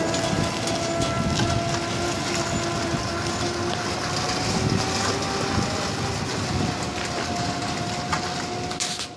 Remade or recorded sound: recorded